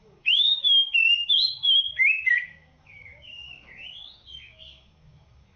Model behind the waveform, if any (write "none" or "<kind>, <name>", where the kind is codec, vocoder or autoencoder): codec, DAC